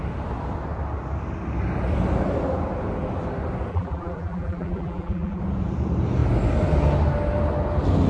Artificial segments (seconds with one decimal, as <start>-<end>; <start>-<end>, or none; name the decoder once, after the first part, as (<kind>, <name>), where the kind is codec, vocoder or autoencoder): 3.7-5.4 (vocoder, BigVGAN v2)